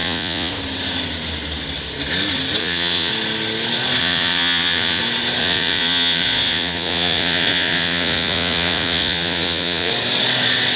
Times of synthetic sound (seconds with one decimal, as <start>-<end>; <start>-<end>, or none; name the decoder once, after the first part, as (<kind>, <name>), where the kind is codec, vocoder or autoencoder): 0.0-0.5 (vocoder, Vocos); 2.6-3.1; 4.0-5.0; 5.4-9.9